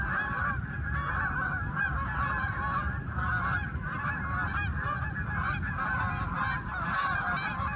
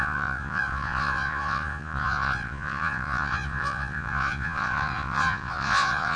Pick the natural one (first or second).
first